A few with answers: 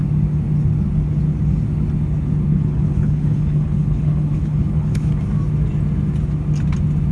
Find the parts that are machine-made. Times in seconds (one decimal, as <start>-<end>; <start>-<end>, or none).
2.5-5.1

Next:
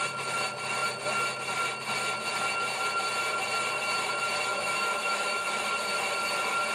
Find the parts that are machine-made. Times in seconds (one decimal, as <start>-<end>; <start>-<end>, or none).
4.5-5.6

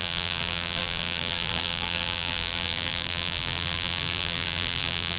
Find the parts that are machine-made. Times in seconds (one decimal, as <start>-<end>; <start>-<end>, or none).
0.0-5.2

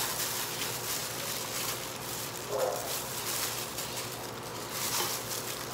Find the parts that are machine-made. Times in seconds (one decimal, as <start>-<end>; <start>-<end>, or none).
1.0-4.1; 4.5-5.1

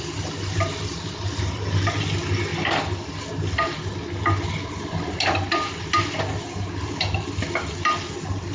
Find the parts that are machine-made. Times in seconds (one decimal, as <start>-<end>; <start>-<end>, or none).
none